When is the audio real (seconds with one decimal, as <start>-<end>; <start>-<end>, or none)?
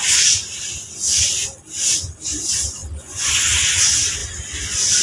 0.0-2.8; 3.3-5.0